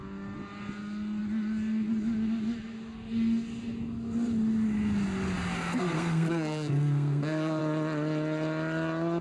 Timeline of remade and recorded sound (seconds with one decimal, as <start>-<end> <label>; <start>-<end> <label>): 0.0-5.8 recorded; 5.8-7.6 remade; 7.6-9.2 recorded